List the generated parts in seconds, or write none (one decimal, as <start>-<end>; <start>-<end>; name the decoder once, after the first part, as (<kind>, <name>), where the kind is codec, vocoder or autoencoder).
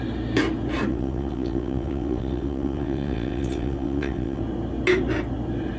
0.9-4.4 (vocoder, WaveNeXt)